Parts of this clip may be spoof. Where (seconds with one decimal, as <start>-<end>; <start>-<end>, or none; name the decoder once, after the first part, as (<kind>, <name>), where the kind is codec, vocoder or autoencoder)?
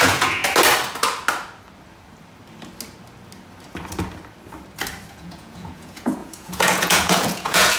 0.0-0.4 (vocoder, Vocos); 5.1-7.8